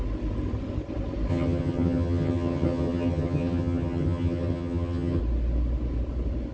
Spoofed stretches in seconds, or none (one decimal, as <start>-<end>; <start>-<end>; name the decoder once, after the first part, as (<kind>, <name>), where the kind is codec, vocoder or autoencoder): 1.3-5.2 (vocoder, HiFi-GAN)